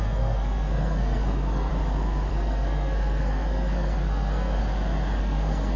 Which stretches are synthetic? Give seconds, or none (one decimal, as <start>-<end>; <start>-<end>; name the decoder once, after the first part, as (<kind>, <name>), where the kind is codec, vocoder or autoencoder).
0.0-1.7 (codec, SNAC); 2.3-4.6; 5.2-5.8